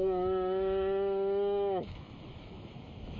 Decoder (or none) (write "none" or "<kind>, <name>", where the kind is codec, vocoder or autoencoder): autoencoder, DAC-VAE